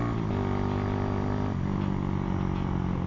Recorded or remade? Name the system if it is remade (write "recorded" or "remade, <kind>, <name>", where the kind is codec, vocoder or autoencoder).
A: recorded